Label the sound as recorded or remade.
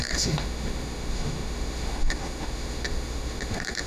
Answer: remade